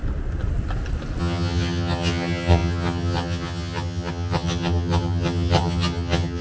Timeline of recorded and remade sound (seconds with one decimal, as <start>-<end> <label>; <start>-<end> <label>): 0.0-1.2 recorded; 1.2-6.4 remade